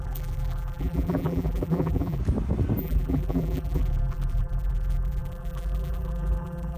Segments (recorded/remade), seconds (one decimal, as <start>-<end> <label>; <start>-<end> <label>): 0.0-2.2 remade; 2.2-2.8 recorded; 2.8-6.8 remade